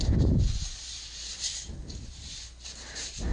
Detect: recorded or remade remade